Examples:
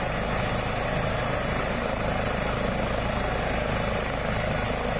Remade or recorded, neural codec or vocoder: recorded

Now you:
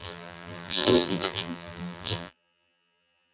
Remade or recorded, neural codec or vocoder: remade, vocoder, BigVGAN v2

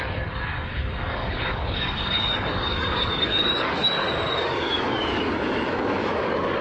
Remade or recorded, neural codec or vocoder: remade, codec, DAC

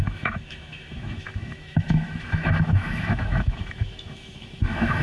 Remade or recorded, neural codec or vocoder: remade, autoencoder, DAC-VAE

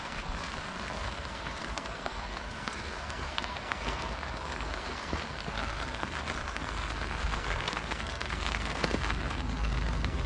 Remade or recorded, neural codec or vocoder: remade, codec, SNAC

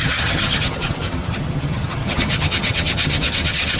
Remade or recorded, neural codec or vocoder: remade, vocoder, HiFi-GAN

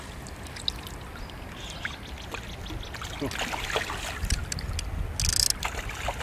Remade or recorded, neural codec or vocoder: recorded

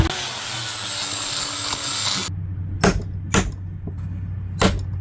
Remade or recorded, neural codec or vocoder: recorded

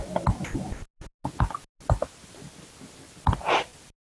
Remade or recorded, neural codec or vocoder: recorded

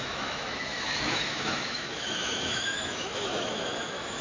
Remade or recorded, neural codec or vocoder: remade, autoencoder, DAC-VAE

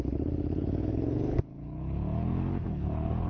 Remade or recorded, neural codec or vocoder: remade, codec, HILCodec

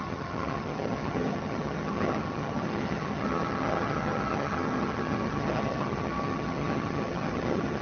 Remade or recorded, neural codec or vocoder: remade, vocoder, HiFi-GAN